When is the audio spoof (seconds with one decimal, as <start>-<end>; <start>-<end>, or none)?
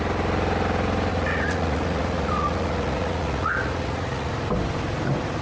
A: 1.1-4.3